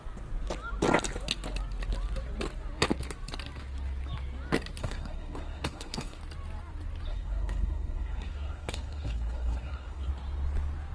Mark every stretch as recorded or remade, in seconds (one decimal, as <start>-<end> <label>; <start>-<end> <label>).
0.0-4.8 recorded; 4.8-6.2 remade; 6.2-7.1 recorded; 7.1-10.1 remade; 10.1-10.9 recorded